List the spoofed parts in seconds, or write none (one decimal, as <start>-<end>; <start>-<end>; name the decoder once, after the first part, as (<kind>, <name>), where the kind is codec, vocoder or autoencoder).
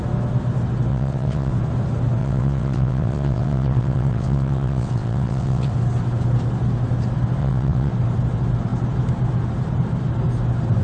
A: 0.9-1.5 (vocoder, WaveNeXt); 2.2-5.7; 7.4-7.9